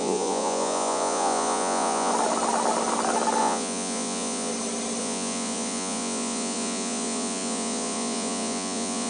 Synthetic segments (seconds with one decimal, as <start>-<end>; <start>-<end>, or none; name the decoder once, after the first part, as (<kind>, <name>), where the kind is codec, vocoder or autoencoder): 0.0-2.1 (vocoder, Vocos); 3.4-4.5; 5.0-9.1